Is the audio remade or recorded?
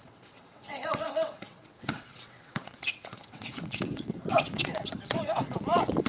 remade